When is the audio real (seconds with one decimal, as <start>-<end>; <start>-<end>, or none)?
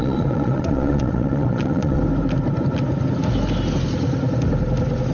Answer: 2.0-5.1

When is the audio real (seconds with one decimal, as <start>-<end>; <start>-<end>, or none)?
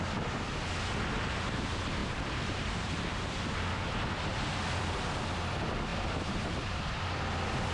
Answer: 0.0-2.0; 3.0-5.9; 7.0-7.7